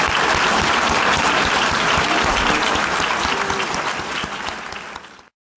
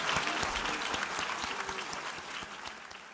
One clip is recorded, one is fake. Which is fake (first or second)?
first